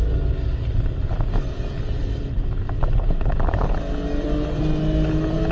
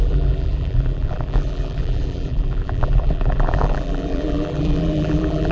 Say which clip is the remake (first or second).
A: second